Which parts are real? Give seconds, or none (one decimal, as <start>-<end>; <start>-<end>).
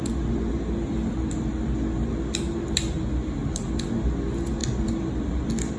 0.0-5.8